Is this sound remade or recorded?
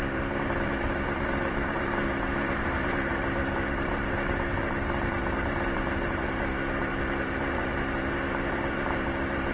remade